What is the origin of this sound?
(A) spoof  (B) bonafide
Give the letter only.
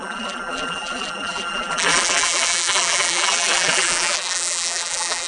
A